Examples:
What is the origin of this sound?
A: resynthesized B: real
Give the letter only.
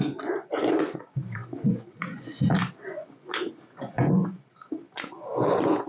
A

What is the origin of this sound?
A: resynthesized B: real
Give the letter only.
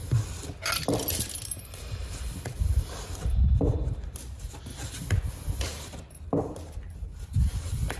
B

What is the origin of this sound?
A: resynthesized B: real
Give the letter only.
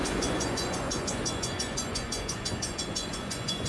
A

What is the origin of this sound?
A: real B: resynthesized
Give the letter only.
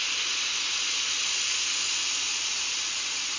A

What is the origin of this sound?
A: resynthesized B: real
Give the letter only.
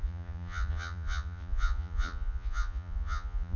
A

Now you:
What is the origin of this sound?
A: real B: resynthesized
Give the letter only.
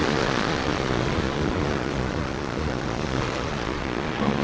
B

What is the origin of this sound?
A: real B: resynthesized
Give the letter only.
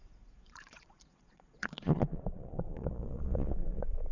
B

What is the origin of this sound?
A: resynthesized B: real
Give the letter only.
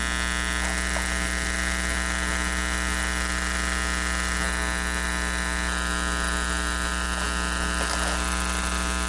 B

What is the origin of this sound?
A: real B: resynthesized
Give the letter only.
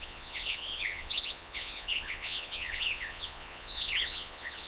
B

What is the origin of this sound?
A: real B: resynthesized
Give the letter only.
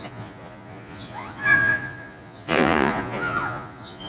B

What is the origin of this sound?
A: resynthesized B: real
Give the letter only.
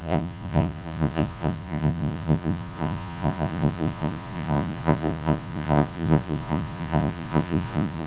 A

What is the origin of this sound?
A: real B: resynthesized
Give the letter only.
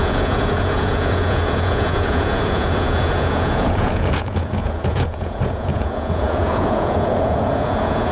B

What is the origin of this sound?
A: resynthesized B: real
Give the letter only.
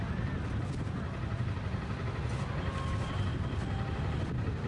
B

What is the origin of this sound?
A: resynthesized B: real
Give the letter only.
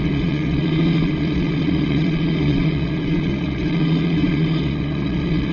A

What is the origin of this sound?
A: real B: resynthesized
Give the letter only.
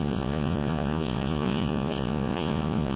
B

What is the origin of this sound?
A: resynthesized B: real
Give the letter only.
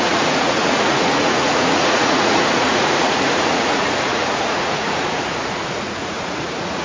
A